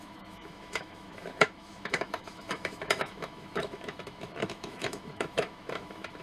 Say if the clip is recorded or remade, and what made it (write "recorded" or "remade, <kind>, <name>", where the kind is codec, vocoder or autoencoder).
remade, autoencoder, DAC-VAE